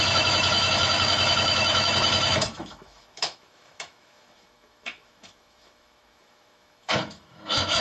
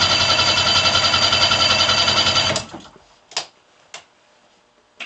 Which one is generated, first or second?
first